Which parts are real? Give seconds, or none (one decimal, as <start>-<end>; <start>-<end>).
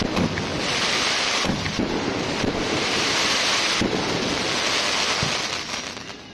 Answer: 0.0-0.5; 4.3-6.3